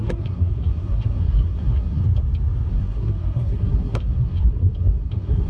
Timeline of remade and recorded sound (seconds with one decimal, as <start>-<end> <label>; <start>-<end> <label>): 0.0-2.0 remade; 2.0-2.7 recorded; 2.7-5.5 remade